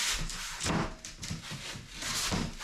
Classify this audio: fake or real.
real